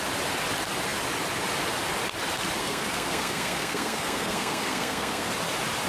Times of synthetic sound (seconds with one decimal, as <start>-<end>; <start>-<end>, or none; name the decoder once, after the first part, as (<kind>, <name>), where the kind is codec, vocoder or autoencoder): 2.6-5.3 (codec, SNAC)